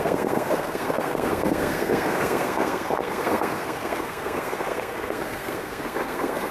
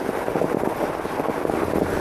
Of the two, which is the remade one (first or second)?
first